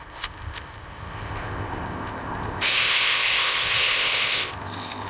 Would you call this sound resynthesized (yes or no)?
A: yes